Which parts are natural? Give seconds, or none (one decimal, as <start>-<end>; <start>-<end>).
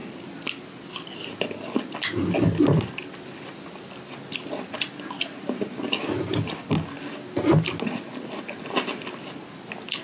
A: 0.0-10.0